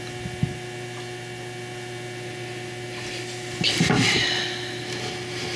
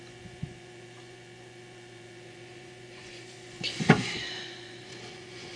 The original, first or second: first